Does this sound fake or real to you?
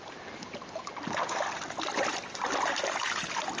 real